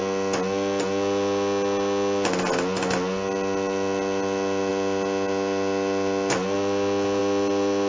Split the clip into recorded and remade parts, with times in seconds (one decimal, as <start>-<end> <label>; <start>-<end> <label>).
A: 0.0-7.9 recorded